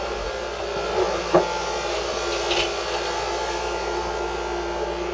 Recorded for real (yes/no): yes